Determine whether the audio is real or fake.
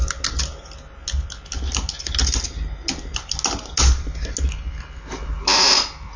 real